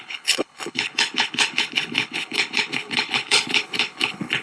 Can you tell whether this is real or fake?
fake